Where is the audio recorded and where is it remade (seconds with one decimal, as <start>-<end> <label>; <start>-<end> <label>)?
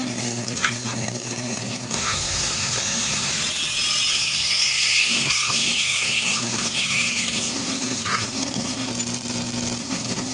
0.0-3.3 remade; 3.3-4.1 recorded; 4.1-8.9 remade; 8.9-9.8 recorded; 9.8-10.3 remade